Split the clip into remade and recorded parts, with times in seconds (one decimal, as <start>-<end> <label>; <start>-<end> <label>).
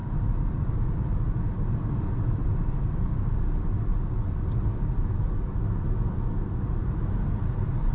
0.0-3.9 remade; 3.9-7.4 recorded; 7.4-7.9 remade